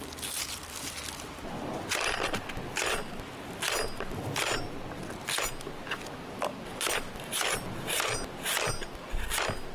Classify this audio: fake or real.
real